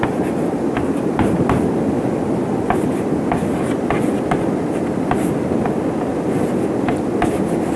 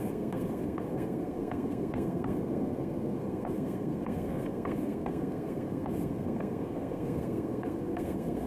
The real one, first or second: first